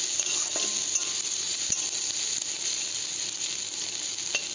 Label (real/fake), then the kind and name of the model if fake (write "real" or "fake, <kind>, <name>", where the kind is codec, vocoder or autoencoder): real